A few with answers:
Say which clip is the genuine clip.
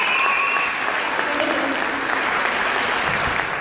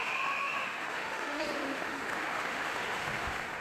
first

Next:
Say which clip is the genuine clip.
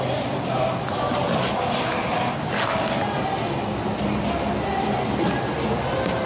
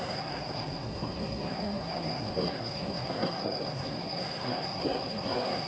first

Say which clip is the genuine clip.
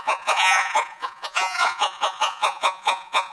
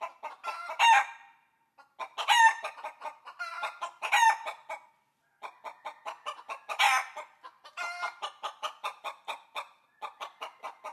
second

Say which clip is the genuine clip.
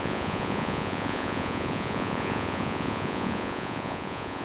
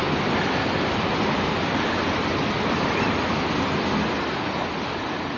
second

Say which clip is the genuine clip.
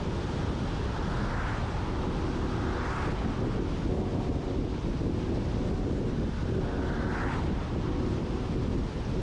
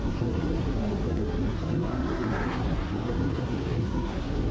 first